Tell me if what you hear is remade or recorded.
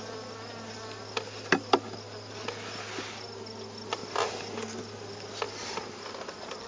recorded